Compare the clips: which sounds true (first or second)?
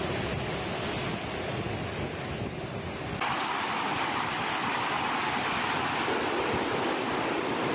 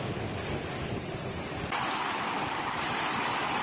first